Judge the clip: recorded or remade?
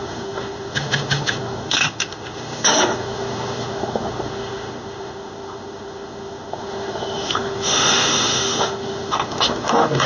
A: remade